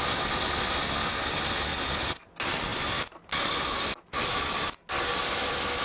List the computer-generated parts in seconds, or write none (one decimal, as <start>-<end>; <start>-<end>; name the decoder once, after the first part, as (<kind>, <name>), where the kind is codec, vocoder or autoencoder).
none